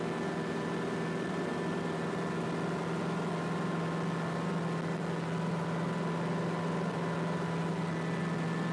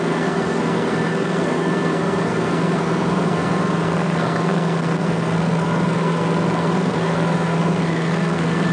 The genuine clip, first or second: first